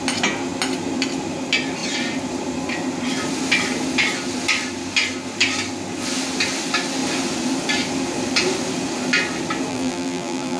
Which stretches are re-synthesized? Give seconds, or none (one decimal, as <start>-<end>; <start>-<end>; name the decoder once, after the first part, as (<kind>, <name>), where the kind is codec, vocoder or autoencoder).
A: 9.7-10.6 (vocoder, BigVGAN v2)